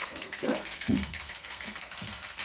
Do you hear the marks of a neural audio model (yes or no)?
yes